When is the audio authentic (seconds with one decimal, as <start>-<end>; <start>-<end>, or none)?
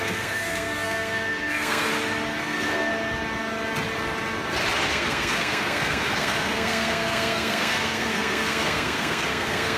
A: 1.9-2.4; 2.9-4.9